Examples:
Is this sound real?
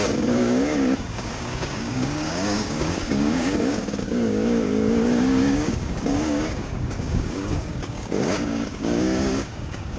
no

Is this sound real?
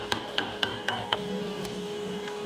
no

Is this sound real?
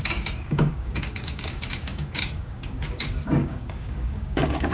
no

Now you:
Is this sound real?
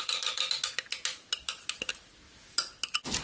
yes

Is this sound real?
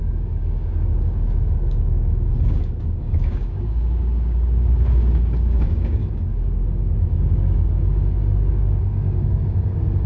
no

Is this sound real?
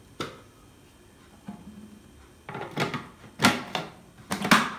yes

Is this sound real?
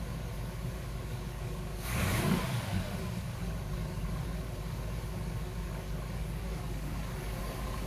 no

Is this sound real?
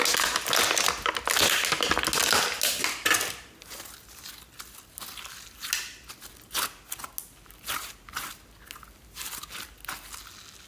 yes